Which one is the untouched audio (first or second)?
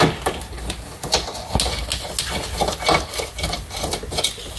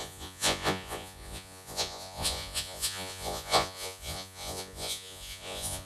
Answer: first